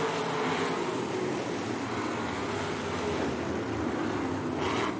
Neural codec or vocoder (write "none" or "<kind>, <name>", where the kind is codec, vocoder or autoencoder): none